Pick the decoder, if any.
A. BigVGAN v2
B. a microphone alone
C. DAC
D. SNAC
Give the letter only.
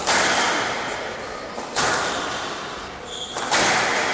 B